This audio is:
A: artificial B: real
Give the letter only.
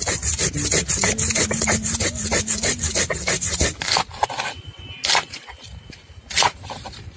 B